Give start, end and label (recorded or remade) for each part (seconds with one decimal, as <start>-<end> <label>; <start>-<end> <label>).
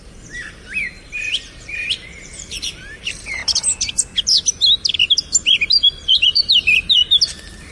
0.0-3.4 remade; 3.4-5.7 recorded; 5.7-7.0 remade; 7.0-7.7 recorded